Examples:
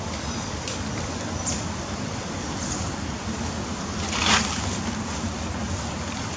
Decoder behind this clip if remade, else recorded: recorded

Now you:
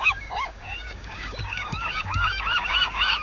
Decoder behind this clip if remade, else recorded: remade, codec, DAC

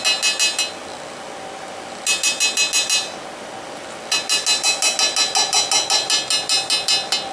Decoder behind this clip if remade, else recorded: recorded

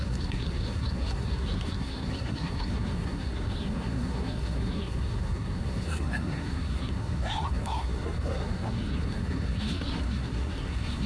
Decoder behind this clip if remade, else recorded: remade, codec, SNAC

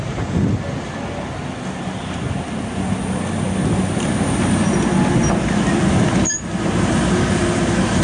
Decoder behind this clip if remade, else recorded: recorded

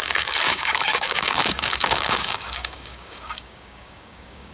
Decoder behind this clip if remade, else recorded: remade, codec, DAC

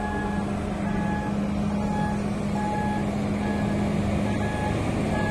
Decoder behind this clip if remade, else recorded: recorded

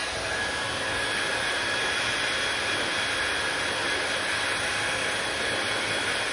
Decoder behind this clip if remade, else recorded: recorded